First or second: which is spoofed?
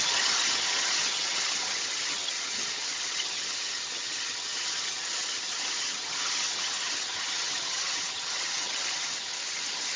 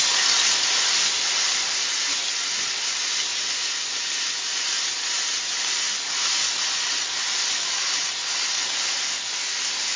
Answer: first